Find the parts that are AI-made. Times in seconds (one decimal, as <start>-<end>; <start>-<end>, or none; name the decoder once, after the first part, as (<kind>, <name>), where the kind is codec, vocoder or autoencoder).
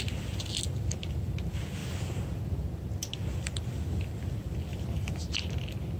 4.7-5.5 (vocoder, BigVGAN v2)